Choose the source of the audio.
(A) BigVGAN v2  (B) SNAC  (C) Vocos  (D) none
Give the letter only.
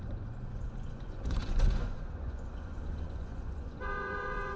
C